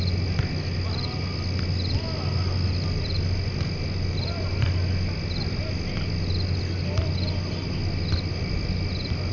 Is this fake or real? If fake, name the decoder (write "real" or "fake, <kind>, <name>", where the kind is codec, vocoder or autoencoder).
real